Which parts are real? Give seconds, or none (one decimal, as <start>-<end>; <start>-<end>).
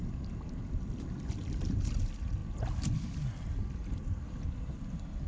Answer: 0.0-0.7; 2.4-5.3